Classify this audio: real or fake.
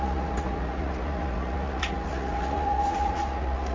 fake